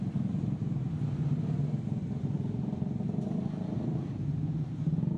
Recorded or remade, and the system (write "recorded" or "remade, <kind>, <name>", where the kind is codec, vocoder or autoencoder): remade, vocoder, BigVGAN v2